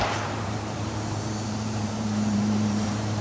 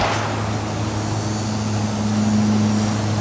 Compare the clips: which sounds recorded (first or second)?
second